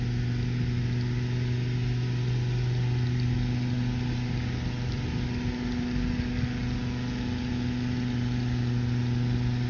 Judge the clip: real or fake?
real